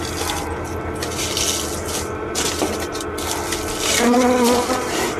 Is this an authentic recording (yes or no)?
yes